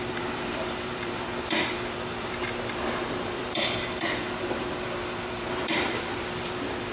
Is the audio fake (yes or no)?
yes